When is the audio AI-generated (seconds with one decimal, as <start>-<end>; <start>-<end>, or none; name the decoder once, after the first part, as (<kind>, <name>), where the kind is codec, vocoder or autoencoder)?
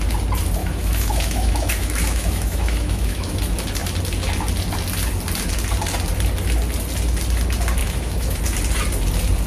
0.6-3.4 (autoencoder, DAC-VAE); 7.8-8.4